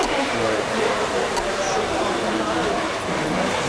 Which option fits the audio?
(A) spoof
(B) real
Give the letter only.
A